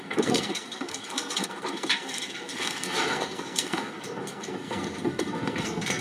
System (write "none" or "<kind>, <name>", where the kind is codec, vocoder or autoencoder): codec, SNAC